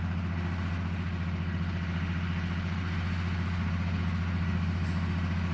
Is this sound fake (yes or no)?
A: no